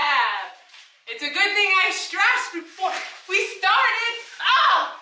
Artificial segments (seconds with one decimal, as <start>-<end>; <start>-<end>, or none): 0.0-0.5; 3.5-4.4